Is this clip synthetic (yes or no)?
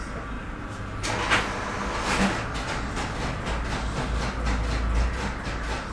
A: no